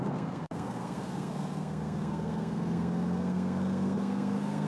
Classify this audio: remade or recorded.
remade